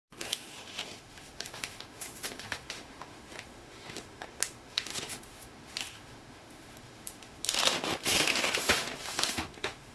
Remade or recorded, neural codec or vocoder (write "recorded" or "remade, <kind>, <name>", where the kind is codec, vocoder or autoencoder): remade, autoencoder, DAC-VAE